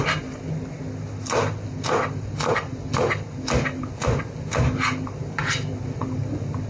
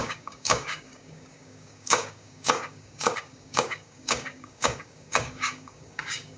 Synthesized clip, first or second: second